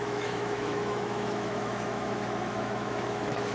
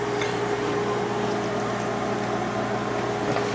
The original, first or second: second